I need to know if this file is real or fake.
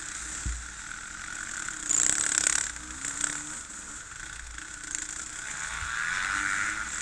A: real